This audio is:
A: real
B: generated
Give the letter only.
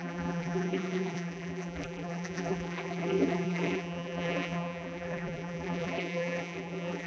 B